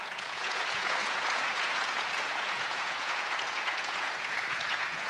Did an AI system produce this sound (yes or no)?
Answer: yes